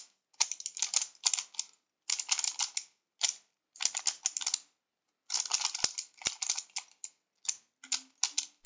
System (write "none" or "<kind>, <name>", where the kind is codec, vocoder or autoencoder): none